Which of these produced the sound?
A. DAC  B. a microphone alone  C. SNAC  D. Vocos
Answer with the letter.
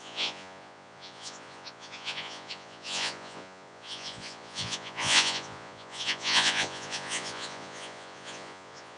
D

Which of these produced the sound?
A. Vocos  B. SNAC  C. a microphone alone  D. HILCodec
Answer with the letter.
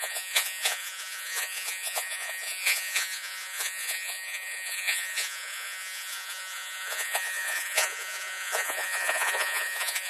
A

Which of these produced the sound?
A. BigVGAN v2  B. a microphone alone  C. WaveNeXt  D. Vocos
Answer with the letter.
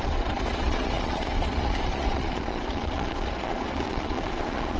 D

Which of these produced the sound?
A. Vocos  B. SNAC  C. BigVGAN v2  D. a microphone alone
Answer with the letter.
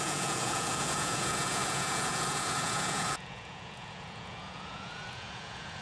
A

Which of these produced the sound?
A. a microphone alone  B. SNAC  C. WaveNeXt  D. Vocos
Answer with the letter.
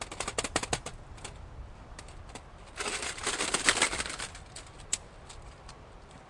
A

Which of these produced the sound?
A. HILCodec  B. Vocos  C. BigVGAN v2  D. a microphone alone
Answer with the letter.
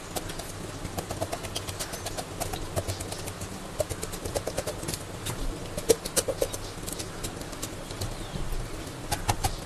D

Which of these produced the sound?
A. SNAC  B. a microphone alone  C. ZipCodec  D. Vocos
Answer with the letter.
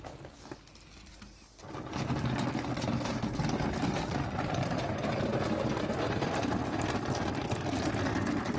B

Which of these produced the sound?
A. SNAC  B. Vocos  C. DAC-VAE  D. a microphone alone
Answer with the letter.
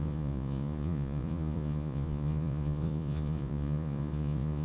B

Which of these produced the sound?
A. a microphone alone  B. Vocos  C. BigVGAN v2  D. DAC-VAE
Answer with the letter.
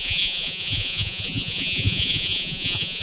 B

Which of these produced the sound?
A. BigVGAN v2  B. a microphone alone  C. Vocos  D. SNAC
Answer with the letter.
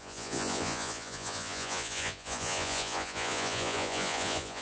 C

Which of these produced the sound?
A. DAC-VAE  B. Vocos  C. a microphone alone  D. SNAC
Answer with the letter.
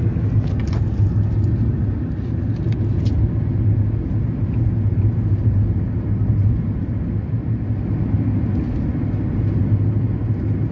C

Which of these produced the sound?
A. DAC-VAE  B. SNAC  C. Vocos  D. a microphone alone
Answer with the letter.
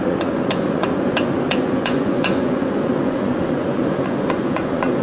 C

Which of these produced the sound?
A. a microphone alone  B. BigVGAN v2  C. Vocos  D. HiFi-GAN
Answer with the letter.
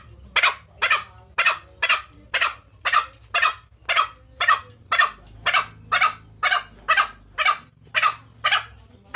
A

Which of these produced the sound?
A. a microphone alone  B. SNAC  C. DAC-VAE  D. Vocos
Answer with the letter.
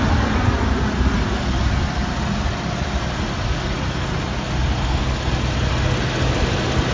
A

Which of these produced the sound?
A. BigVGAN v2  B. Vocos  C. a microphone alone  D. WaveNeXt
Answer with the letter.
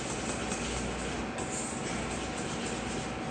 C